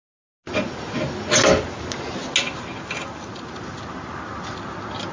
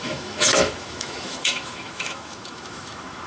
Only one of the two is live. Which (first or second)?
first